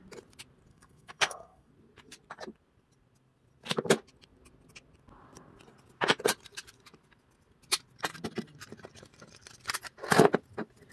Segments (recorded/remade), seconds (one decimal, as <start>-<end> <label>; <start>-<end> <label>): 0.0-0.7 recorded; 0.7-1.7 remade; 1.7-10.9 recorded